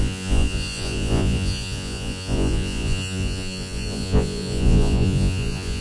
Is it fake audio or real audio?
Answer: fake